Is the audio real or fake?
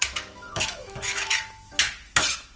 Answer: fake